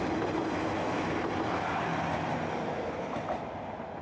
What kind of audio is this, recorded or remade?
recorded